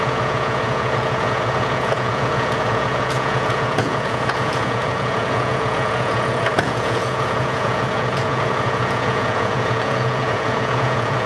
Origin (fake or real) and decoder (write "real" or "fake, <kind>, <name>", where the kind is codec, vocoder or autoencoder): fake, vocoder, Vocos